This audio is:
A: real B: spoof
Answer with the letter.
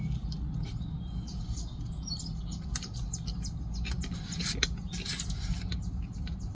A